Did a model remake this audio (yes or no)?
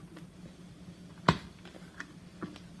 no